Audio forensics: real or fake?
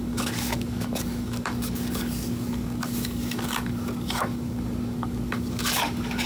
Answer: fake